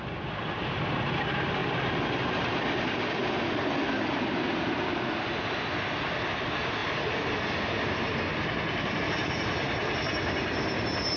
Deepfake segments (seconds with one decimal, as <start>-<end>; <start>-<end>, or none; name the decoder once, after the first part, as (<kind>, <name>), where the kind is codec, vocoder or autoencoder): none